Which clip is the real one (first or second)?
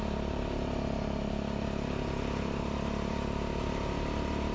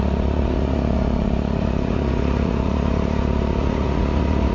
first